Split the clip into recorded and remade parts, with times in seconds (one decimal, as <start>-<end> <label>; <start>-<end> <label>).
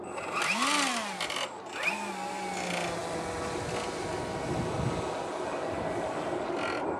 0.0-7.0 recorded